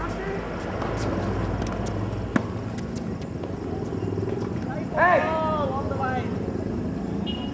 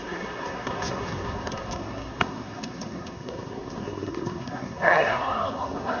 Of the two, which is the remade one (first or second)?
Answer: second